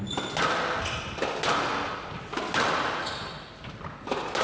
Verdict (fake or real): real